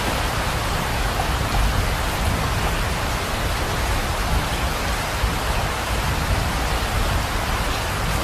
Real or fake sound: real